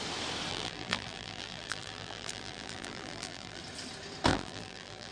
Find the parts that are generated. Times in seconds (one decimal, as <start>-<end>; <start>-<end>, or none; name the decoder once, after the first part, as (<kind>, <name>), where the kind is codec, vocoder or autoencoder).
0.5-3.6 (vocoder, BigVGAN v2); 4.3-5.1